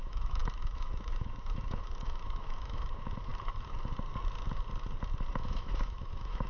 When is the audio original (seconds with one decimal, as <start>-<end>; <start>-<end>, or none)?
3.3-5.3